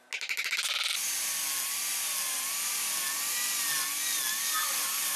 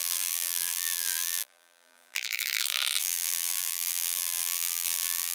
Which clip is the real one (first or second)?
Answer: first